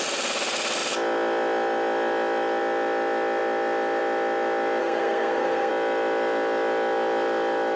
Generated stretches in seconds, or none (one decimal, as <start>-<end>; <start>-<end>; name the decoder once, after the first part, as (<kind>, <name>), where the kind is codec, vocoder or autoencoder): 4.8-5.7 (codec, SNAC)